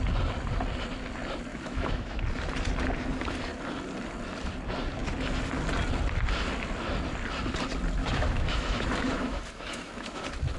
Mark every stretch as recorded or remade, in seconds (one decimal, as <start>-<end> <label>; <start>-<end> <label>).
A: 0.0-1.5 recorded; 1.5-2.2 remade; 2.2-8.0 recorded; 8.0-10.2 remade; 10.2-10.6 recorded